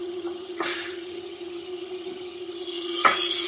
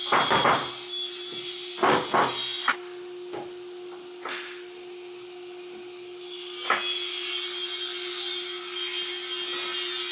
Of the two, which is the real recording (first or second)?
second